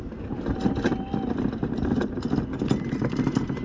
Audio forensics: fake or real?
real